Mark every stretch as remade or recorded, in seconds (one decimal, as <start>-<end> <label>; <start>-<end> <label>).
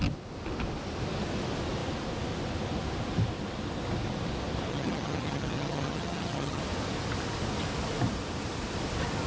0.0-4.7 recorded; 4.7-6.6 remade; 6.6-9.3 recorded